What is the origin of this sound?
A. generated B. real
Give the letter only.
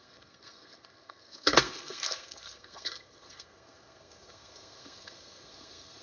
A